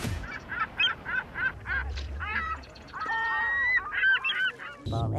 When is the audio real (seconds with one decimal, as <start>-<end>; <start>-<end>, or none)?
0.6-1.8; 3.1-5.2